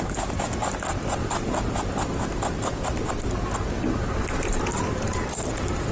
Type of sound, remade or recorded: recorded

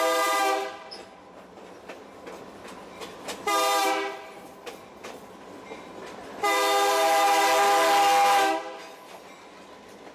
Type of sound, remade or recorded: recorded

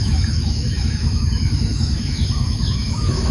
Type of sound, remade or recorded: remade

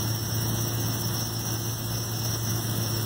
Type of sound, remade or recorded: remade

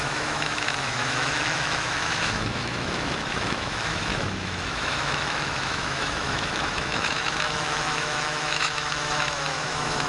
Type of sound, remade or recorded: remade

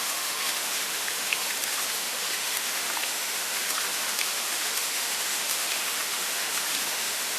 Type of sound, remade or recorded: remade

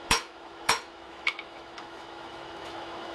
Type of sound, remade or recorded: remade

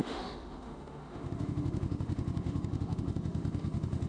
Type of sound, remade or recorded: remade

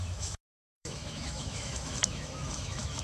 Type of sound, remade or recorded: remade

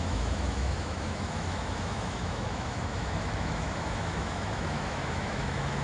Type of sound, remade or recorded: remade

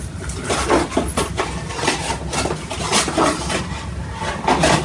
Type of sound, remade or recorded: recorded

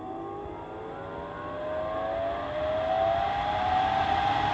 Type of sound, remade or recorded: recorded